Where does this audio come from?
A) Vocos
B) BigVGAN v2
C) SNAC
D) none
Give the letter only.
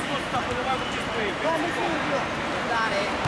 B